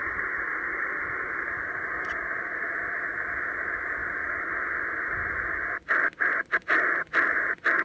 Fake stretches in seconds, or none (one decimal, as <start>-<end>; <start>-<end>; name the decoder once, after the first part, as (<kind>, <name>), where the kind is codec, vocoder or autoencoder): none